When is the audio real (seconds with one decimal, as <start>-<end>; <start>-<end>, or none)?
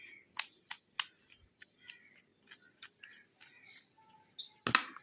0.0-5.0